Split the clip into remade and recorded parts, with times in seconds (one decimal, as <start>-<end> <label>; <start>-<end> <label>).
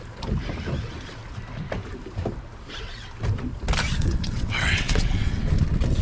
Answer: 0.0-4.0 recorded; 4.0-5.4 remade; 5.4-6.0 recorded